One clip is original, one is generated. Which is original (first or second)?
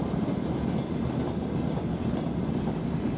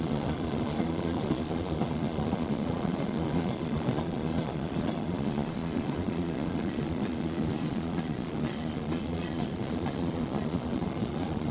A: first